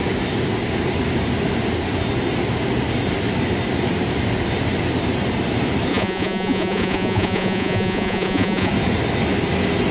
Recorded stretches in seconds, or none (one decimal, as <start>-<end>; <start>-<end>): 0.0-5.9; 8.7-9.9